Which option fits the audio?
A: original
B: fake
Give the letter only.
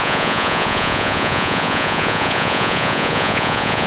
B